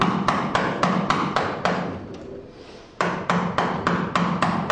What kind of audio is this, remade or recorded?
recorded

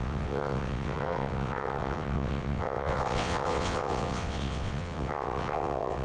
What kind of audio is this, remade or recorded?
remade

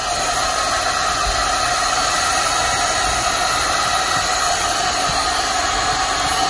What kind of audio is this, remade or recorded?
recorded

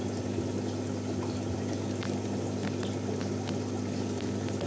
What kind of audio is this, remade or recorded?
recorded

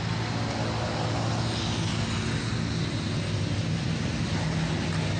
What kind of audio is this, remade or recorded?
recorded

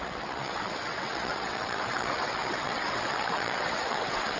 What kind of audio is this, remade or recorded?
remade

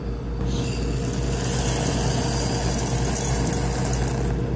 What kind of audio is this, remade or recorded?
recorded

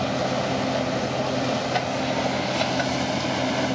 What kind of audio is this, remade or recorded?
recorded